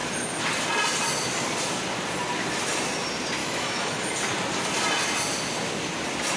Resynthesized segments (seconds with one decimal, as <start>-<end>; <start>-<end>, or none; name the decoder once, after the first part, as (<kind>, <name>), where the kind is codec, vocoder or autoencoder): 3.4-4.0 (autoencoder, DAC-VAE)